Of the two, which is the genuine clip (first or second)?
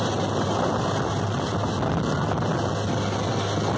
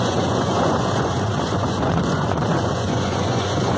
first